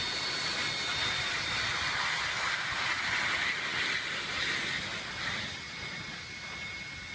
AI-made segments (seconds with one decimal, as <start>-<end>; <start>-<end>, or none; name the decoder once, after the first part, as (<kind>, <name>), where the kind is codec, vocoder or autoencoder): none